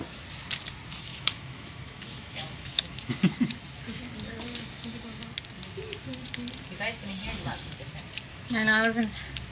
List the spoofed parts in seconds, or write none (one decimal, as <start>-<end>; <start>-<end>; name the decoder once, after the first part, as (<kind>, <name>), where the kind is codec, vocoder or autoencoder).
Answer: 1.1-3.1 (autoencoder, DAC-VAE); 8.3-9.0